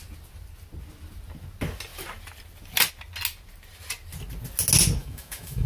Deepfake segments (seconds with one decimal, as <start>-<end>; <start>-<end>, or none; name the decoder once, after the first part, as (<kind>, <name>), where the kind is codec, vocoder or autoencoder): 5.0-5.7 (autoencoder, DAC-VAE)